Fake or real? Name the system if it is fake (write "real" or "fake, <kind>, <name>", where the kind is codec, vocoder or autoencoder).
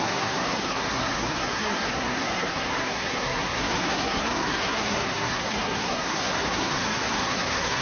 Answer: fake, codec, SNAC